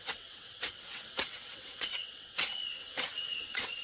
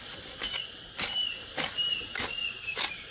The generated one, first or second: first